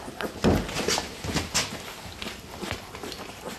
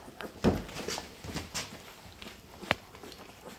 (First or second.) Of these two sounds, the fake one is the second